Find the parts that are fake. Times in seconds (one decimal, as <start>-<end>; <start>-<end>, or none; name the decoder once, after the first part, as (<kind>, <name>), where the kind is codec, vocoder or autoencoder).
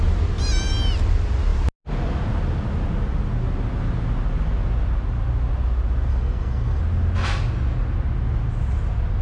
6.1-6.8 (codec, SNAC)